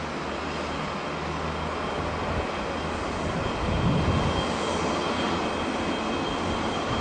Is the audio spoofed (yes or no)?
no